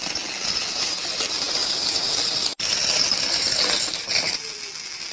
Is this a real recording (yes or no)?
yes